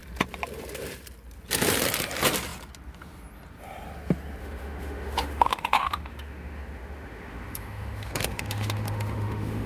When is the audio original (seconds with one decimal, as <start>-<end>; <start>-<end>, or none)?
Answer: 0.0-4.4